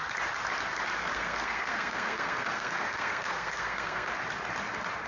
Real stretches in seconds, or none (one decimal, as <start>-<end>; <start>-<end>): 0.0-1.0; 4.1-5.1